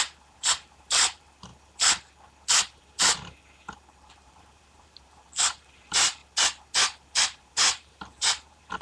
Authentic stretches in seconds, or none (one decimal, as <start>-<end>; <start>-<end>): 1.5-4.1; 6.2-7.2